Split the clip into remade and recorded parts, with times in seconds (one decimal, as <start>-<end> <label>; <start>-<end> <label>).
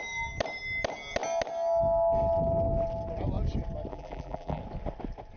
0.0-3.9 recorded; 3.9-4.6 remade; 4.6-5.4 recorded